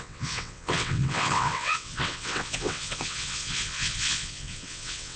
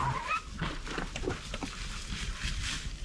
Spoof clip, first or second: first